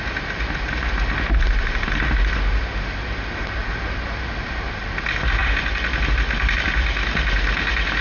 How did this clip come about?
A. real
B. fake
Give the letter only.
A